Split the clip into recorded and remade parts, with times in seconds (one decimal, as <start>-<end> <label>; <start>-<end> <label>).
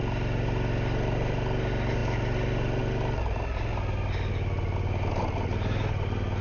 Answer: 0.0-6.4 recorded